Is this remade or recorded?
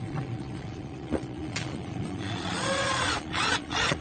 remade